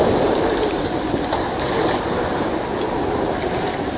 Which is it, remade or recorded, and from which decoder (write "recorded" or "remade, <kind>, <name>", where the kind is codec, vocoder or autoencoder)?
recorded